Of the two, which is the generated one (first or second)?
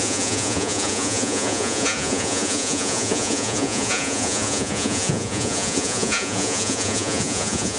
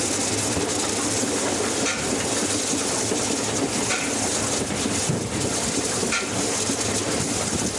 first